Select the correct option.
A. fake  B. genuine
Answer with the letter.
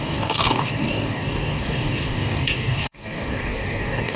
A